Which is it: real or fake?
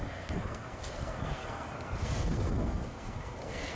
fake